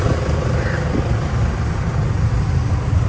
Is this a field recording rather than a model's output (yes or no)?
yes